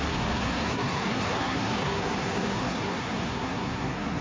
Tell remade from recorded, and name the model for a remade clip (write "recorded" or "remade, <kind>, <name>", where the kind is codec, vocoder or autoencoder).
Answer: remade, codec, SNAC